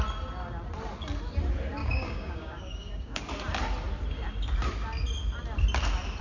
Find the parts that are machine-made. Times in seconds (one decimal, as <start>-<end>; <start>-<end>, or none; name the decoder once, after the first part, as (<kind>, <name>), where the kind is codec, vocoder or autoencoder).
1.8-3.2 (codec, DAC)